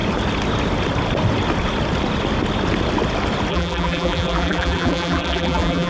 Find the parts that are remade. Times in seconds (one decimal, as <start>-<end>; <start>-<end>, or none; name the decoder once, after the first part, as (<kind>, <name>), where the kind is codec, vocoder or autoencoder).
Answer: 3.5-5.9 (vocoder, BigVGAN v2)